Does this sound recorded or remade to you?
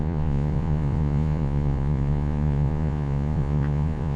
remade